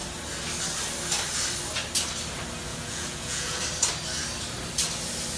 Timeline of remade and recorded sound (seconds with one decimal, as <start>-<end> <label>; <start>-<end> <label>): 0.0-2.7 recorded; 2.7-3.6 remade; 3.6-5.4 recorded